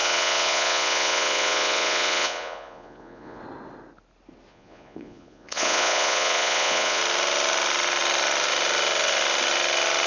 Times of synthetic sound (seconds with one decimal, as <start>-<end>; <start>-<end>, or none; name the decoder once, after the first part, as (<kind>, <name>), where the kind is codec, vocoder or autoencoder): 0.0-3.4 (vocoder, Vocos); 4.5-7.0